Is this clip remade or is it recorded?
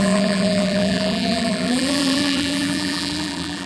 remade